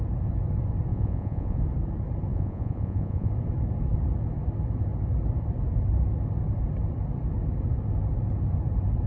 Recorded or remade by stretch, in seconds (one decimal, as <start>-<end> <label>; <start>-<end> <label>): 0.0-0.9 recorded; 0.9-1.6 remade; 1.6-2.3 recorded; 2.3-3.3 remade; 3.3-9.1 recorded